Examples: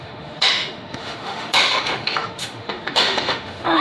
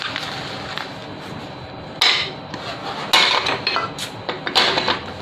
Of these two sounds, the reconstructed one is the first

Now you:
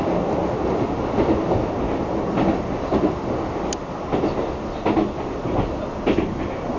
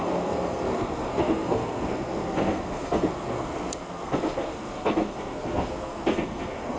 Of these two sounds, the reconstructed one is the second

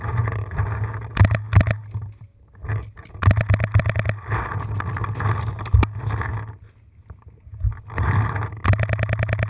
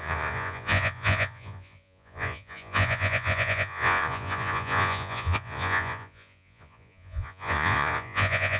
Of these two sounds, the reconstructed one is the second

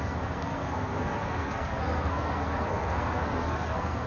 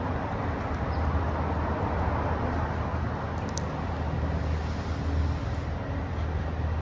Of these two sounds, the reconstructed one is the first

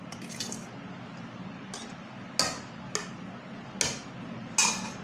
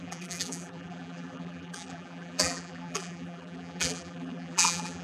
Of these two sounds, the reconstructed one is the second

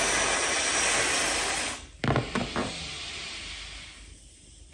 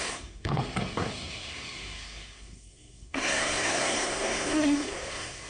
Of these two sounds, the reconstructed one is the second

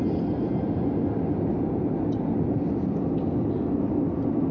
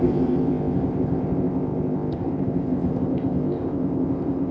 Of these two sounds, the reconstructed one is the second